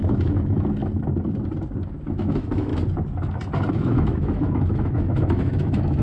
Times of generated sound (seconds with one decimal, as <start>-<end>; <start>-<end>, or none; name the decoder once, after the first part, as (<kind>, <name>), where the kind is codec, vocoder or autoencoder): 0.0-0.8 (autoencoder, DAC-VAE); 2.1-2.7; 3.7-6.0